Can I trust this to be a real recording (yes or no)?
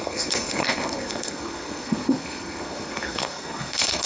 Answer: no